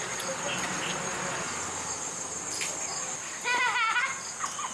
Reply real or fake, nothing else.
real